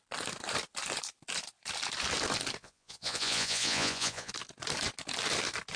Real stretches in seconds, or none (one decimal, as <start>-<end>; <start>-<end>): 0.0-2.6; 4.3-5.8